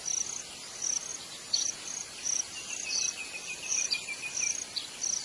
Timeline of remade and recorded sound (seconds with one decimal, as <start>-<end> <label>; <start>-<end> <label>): 0.0-1.1 recorded; 1.1-4.2 remade; 4.2-5.2 recorded